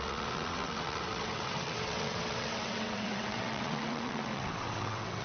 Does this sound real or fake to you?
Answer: fake